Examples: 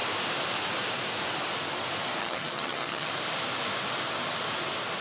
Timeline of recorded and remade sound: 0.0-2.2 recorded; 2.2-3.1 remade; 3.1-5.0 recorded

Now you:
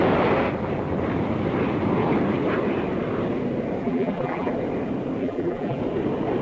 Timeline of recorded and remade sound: 0.0-3.8 recorded; 3.8-4.5 remade; 4.5-5.2 recorded; 5.2-5.8 remade; 5.8-6.4 recorded